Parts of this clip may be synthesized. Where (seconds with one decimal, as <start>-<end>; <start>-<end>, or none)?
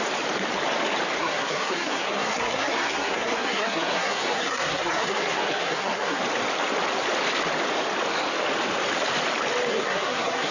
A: 1.2-6.2; 9.7-10.5